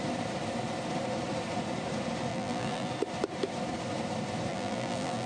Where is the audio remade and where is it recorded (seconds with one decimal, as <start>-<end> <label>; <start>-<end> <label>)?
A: 0.0-2.3 recorded; 2.3-2.9 remade; 2.9-4.5 recorded; 4.5-5.3 remade